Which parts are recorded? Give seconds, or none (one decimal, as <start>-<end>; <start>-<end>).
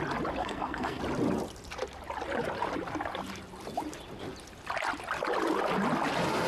0.0-0.4; 1.0-6.5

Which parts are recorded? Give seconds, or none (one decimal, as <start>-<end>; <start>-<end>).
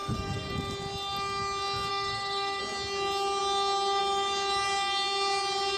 0.5-1.9; 2.6-5.8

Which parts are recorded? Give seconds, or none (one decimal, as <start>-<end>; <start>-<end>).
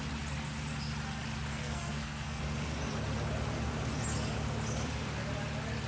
0.0-1.5; 2.4-5.9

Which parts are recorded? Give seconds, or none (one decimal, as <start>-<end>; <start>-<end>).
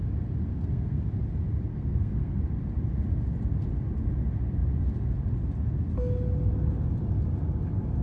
0.0-0.5; 1.0-1.7; 2.4-8.0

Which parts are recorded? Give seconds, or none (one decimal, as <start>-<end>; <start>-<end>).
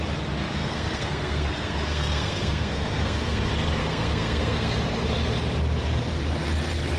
0.0-0.6; 3.4-3.8; 4.7-7.0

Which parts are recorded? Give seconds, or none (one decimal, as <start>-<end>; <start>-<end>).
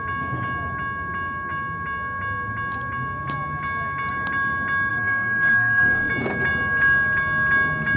0.0-4.9; 6.1-8.0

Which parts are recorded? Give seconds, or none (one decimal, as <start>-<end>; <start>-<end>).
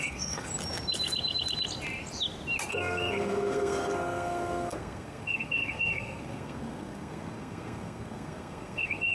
0.5-2.7